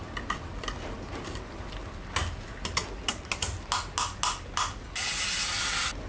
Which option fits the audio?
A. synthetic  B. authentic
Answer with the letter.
B